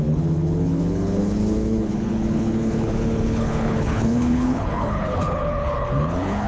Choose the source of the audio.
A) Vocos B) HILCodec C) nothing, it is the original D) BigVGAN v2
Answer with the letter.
B